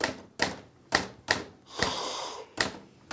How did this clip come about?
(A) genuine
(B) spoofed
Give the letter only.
A